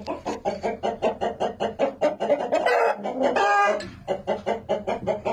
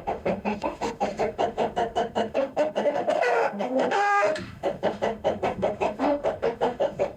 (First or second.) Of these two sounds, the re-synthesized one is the second